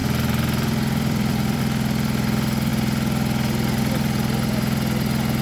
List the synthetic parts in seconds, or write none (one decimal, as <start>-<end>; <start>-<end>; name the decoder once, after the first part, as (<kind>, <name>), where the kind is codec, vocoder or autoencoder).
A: 0.0-1.6 (vocoder, BigVGAN v2)